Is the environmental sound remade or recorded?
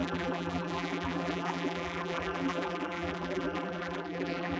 remade